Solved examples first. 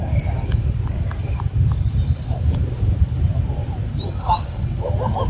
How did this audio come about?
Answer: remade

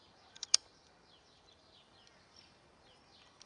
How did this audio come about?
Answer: remade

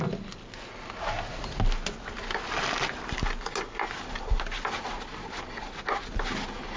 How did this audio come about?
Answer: recorded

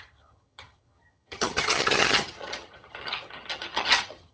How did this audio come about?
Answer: remade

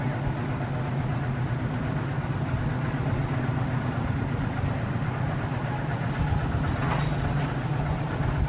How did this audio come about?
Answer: recorded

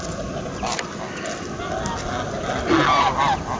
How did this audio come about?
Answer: recorded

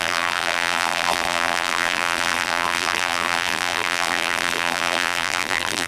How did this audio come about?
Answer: remade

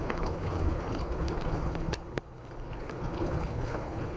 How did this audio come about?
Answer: remade